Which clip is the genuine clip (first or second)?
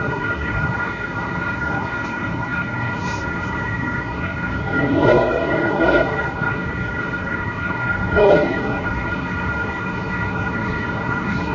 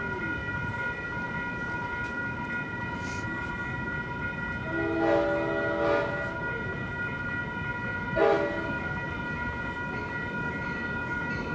second